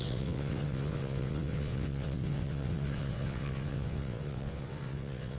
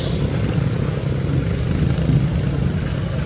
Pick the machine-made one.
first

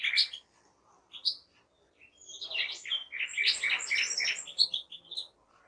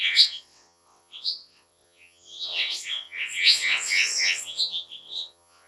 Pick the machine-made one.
second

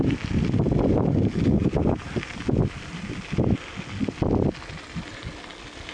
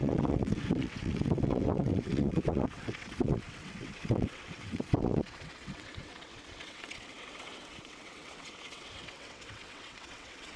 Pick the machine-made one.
second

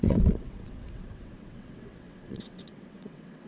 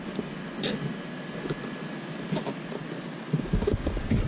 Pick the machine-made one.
first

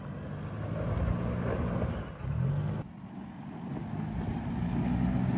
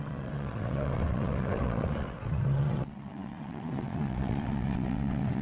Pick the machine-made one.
second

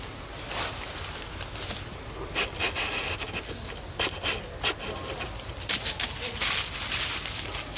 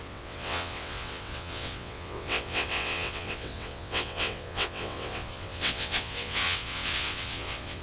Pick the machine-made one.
second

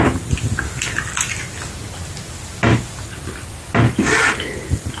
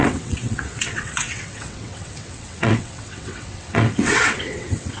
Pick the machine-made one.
second